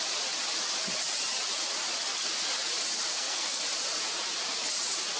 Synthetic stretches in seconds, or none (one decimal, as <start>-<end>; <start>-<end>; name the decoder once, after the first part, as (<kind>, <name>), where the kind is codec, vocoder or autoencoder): 3.1-3.6 (codec, SNAC)